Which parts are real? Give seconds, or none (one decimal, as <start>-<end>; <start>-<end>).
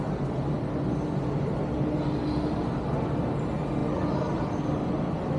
0.0-5.4